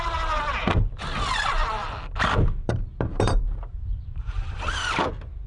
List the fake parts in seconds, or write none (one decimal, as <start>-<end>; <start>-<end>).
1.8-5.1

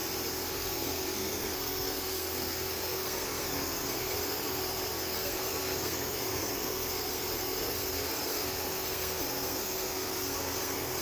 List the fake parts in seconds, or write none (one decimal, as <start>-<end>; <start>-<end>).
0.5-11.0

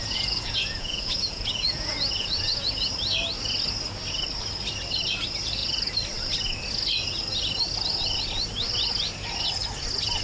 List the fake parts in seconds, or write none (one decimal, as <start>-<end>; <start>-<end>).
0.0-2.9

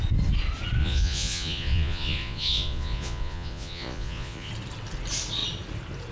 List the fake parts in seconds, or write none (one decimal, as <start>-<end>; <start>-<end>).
0.8-4.5

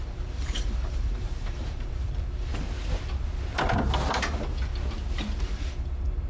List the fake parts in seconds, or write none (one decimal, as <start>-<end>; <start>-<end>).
0.0-2.5; 4.1-4.7; 5.4-6.3

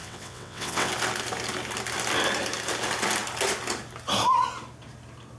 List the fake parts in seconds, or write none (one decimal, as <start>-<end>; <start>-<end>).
0.0-0.9

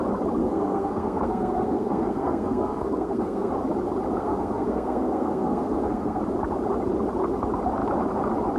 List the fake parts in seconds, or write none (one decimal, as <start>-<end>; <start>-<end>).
0.4-3.5; 4.2-6.2

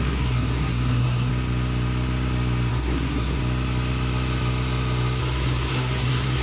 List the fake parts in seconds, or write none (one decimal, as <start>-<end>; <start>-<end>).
0.0-1.3; 2.7-3.4; 5.2-6.4